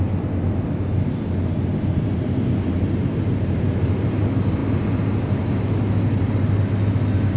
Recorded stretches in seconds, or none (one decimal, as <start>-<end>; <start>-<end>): 0.0-7.4